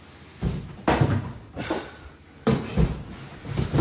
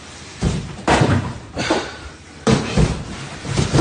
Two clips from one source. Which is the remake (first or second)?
second